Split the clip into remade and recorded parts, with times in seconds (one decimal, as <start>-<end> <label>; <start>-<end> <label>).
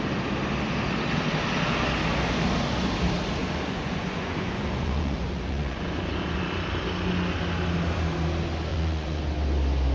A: 0.0-3.4 recorded; 3.4-6.4 remade; 6.4-8.7 recorded; 8.7-9.2 remade; 9.2-9.9 recorded